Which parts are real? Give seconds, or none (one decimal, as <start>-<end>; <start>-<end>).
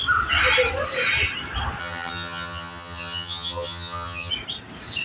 0.0-1.8; 4.3-5.0